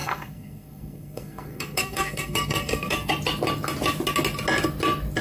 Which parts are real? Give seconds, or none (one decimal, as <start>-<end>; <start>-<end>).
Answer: 3.1-5.2